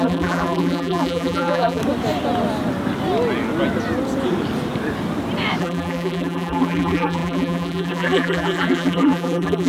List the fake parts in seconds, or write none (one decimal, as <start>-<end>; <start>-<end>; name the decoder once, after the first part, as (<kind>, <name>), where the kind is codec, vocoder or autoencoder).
0.0-1.8 (vocoder, BigVGAN v2); 5.6-9.7